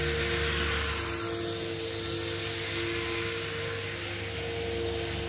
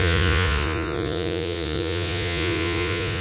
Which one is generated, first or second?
second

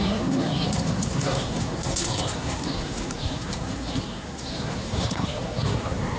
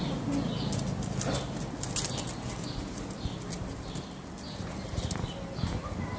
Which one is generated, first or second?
first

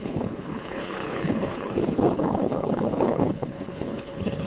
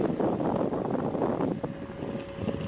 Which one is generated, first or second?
first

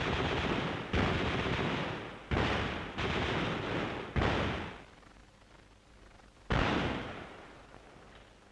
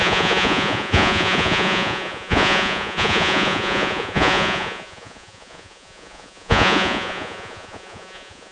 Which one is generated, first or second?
second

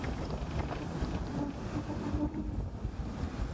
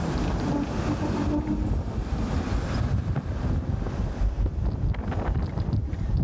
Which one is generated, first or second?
first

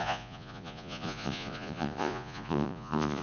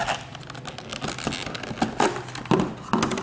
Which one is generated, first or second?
first